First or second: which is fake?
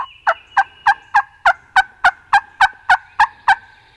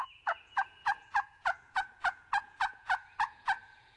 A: second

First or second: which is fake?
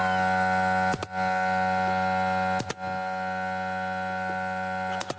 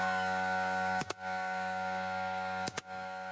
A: second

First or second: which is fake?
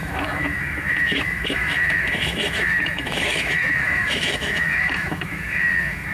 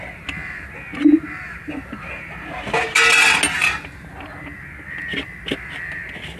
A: first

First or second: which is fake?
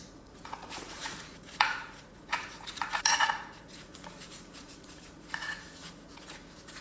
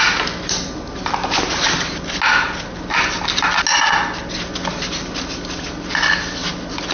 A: first